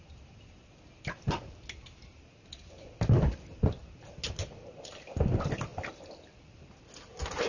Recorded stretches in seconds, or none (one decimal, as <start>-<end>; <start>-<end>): 0.0-7.5